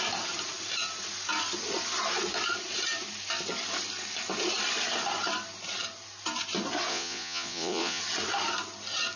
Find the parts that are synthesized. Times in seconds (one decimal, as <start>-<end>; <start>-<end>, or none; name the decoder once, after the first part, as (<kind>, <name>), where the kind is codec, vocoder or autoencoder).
6.9-8.0 (vocoder, Vocos)